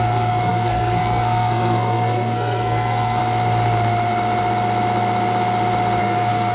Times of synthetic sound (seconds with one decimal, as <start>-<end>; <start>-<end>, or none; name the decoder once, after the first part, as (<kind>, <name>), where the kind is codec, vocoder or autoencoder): 0.0-3.2 (codec, SNAC); 6.0-6.5